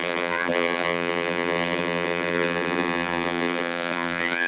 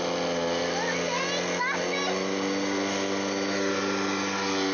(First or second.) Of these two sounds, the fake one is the first